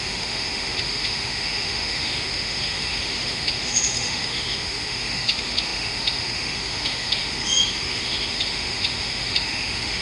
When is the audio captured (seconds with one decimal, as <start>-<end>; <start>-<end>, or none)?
none